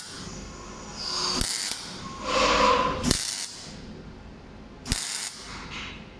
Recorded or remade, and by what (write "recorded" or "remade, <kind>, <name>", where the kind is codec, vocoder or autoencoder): recorded